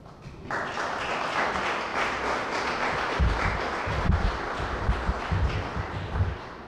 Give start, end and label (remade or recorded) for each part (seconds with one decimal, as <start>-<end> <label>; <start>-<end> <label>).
0.0-6.7 recorded